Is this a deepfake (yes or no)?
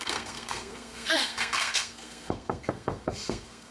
yes